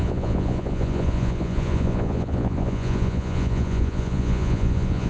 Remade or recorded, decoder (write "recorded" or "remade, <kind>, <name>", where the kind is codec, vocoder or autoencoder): remade, vocoder, Vocos